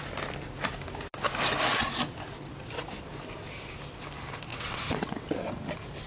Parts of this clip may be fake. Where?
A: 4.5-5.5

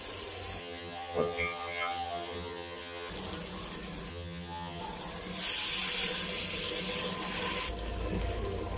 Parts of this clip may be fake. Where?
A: 0.6-3.1; 4.1-4.8

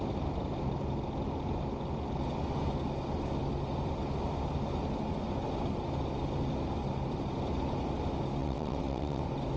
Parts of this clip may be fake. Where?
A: 8.4-9.2

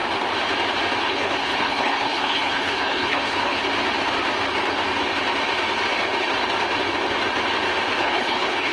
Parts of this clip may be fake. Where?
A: 1.0-3.6; 8.0-8.7

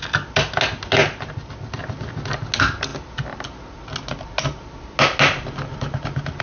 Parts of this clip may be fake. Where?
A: none

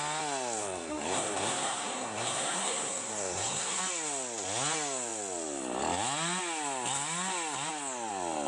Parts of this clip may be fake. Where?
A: 0.6-3.8

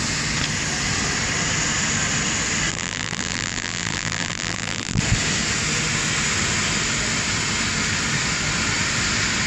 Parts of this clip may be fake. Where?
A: 2.7-5.0